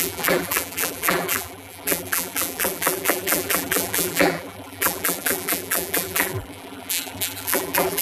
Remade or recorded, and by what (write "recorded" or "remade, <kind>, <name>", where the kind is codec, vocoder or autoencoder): remade, vocoder, BigVGAN v2